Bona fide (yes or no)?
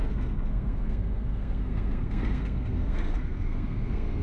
no